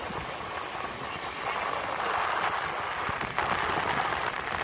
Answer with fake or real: real